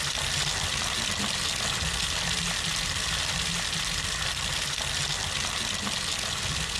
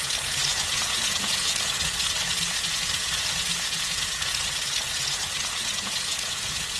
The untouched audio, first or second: first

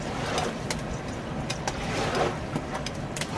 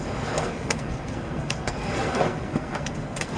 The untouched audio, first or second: first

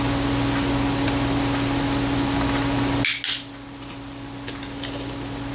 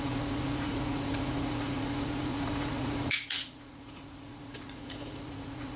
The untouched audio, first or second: first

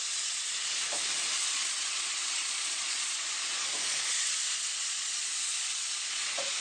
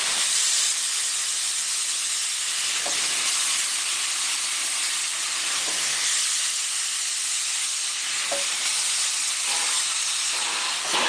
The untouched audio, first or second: second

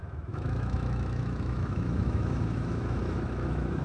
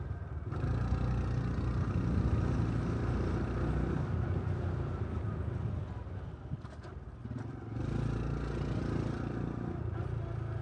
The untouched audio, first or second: second